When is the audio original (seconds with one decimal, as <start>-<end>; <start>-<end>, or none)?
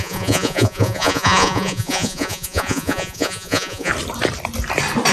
3.9-5.1